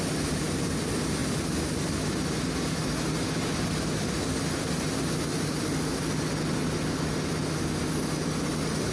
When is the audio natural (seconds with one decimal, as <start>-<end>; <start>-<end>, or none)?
0.0-8.9